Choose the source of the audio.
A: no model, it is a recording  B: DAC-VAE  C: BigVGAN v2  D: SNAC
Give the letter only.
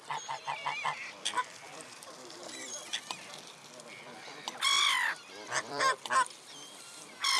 C